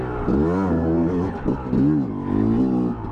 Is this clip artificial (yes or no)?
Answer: no